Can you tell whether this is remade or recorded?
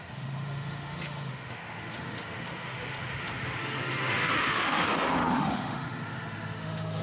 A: remade